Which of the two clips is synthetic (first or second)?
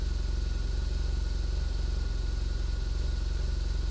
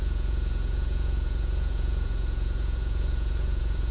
second